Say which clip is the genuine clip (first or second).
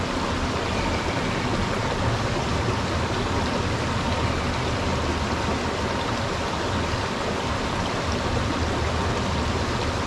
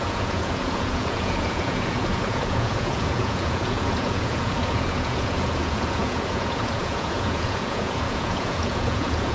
first